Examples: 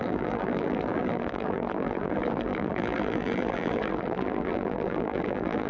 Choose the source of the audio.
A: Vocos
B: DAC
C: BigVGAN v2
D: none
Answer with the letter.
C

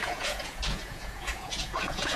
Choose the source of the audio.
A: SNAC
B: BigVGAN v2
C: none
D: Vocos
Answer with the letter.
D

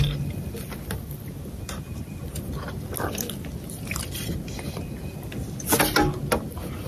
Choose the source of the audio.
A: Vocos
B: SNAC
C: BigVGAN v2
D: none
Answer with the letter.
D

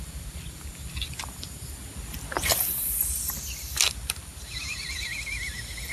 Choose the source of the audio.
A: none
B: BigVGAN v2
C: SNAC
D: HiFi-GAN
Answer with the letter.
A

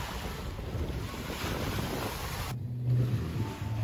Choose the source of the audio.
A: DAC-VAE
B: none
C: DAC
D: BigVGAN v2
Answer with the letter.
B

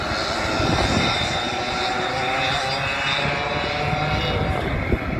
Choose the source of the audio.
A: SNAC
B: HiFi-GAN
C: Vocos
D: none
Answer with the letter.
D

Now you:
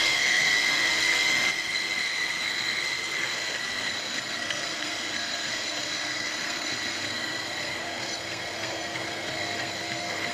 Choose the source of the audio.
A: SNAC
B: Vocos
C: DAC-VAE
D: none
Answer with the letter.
A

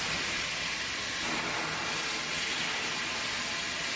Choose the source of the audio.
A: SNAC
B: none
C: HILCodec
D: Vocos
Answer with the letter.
B